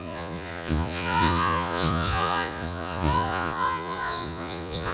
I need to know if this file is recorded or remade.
remade